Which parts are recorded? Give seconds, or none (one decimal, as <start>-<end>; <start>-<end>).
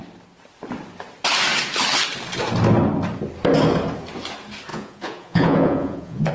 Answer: 0.0-4.7